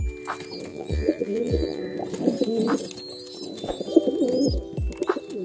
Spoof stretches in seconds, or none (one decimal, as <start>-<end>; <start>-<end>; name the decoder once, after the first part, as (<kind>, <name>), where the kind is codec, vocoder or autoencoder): 0.7-1.8 (vocoder, Vocos)